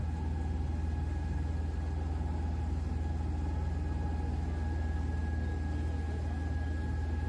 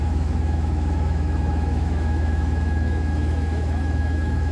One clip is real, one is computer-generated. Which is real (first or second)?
first